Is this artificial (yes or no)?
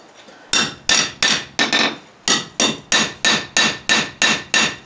no